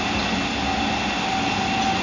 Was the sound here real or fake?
real